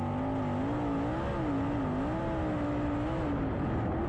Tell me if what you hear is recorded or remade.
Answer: recorded